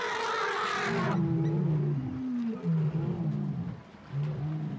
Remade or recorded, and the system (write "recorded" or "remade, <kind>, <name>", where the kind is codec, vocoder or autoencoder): recorded